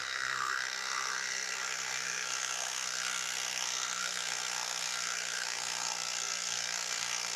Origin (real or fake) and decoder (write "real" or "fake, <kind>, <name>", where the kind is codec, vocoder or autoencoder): fake, codec, SNAC